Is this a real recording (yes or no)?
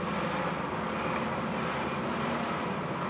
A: yes